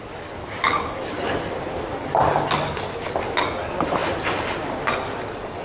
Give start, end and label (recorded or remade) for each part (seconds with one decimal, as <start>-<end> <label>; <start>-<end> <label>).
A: 0.0-5.6 recorded

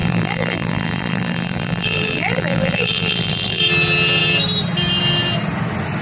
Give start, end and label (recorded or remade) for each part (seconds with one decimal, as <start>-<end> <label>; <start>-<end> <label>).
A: 0.0-3.6 remade; 3.6-6.0 recorded